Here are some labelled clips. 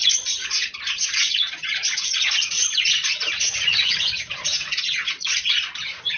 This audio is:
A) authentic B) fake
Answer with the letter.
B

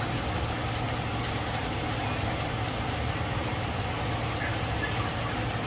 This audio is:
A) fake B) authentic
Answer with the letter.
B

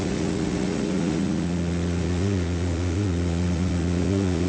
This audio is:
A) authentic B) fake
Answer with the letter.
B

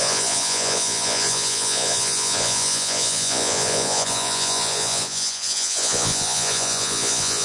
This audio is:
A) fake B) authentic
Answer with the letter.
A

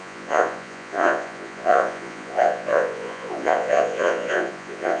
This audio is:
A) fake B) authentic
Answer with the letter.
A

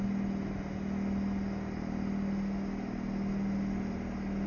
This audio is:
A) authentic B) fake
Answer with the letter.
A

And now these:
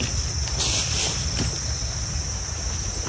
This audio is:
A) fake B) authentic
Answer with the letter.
B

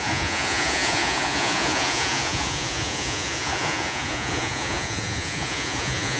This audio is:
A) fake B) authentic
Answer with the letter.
A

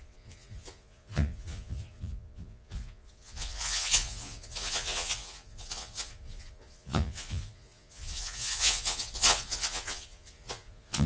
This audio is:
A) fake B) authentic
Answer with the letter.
A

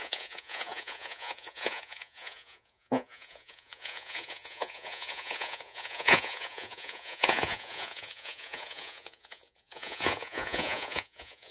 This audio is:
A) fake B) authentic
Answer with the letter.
A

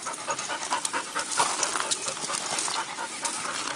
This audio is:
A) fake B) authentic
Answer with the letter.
B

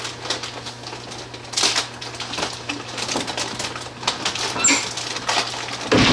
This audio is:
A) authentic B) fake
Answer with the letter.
A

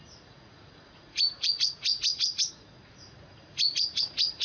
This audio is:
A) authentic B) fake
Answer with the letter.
B